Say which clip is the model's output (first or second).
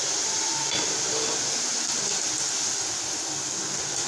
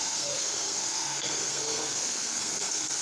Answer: second